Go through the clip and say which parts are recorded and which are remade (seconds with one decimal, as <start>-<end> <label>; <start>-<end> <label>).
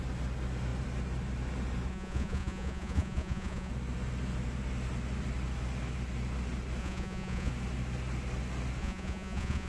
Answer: 0.0-1.9 recorded; 1.9-3.7 remade; 3.7-6.8 recorded; 6.8-7.5 remade; 7.5-8.8 recorded; 8.8-9.7 remade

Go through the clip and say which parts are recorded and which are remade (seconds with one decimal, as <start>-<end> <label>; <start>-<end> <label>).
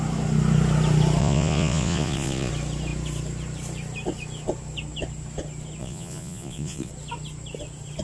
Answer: 0.0-1.2 recorded; 1.2-2.5 remade; 2.5-5.8 recorded; 5.8-6.9 remade; 6.9-8.0 recorded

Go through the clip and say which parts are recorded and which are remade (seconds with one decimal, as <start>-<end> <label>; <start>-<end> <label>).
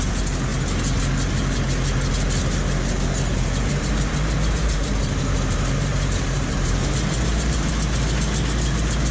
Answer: 0.0-3.3 recorded; 3.3-7.7 remade; 7.7-9.1 recorded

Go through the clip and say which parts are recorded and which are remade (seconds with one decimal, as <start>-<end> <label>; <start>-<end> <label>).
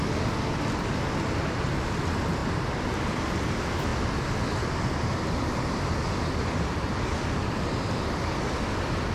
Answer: 0.0-9.1 recorded